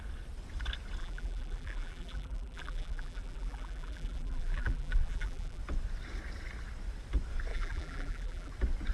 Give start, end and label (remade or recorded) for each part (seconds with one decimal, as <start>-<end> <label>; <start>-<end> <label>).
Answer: 0.0-1.0 recorded; 1.0-5.6 remade; 5.6-7.5 recorded; 7.5-8.5 remade; 8.5-8.9 recorded